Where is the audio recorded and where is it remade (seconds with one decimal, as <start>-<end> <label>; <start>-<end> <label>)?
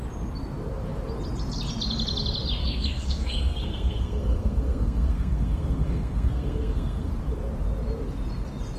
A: 0.0-2.6 recorded; 2.6-7.1 remade; 7.1-8.8 recorded